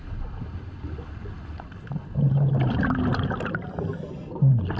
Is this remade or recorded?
recorded